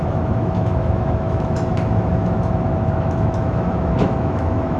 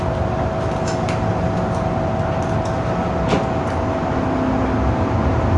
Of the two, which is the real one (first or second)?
second